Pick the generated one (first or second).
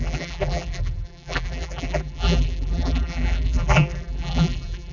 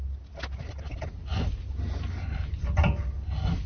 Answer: first